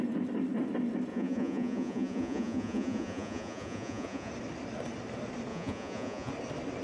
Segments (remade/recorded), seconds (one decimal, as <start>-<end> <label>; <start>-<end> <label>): 0.0-1.1 recorded; 1.1-4.3 remade; 4.3-5.5 recorded; 5.5-6.3 remade; 6.3-6.8 recorded